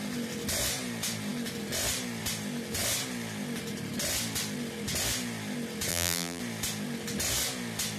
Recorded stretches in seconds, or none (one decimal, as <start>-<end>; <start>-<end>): 0.0-5.9; 6.4-8.0